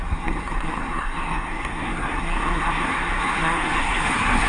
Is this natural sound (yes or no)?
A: no